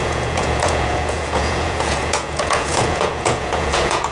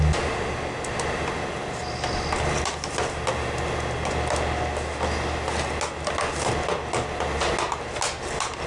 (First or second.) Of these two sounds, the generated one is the first